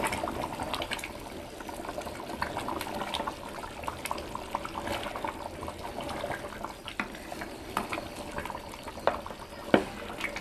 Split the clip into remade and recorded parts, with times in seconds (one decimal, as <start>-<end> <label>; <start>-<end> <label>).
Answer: 0.0-10.4 recorded